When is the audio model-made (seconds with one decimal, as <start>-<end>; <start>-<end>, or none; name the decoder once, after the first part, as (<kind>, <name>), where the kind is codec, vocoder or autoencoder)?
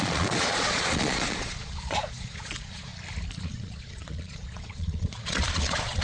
0.0-2.9 (vocoder, Vocos); 3.4-6.0